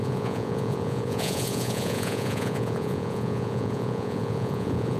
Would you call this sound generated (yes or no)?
yes